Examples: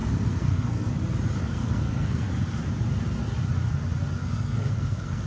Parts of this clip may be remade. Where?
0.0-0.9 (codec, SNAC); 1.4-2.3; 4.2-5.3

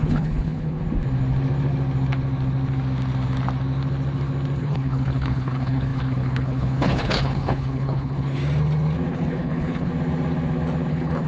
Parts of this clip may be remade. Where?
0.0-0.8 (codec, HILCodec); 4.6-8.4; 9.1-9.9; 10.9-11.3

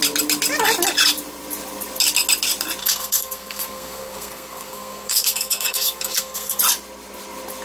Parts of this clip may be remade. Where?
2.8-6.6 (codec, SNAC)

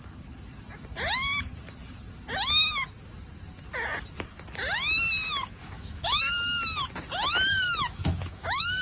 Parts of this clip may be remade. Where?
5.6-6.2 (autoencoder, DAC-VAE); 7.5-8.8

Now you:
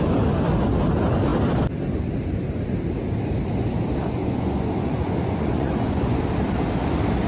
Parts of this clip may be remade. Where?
4.2-6.2 (vocoder, Vocos)

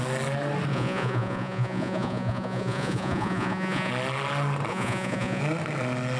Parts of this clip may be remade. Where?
0.7-3.9 (vocoder, Vocos); 4.7-5.4